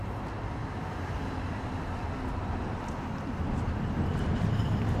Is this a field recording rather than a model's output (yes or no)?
yes